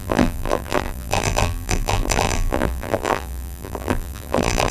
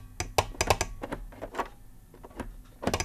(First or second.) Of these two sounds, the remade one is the first